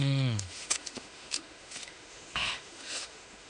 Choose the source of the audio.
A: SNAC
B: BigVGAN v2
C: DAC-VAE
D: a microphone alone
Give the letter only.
C